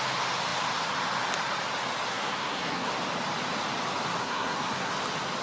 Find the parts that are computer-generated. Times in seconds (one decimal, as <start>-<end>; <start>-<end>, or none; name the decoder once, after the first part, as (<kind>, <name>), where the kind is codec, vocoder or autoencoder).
2.1-2.9 (codec, SNAC); 4.2-4.9